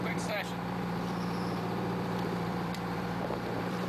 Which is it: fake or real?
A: fake